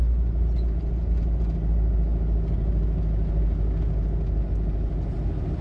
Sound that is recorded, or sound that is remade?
recorded